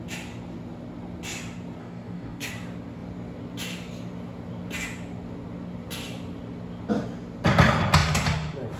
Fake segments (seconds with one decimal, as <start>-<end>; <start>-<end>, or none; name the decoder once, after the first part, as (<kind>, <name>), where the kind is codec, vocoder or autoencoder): 1.8-2.5 (codec, DAC)